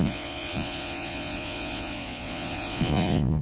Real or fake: fake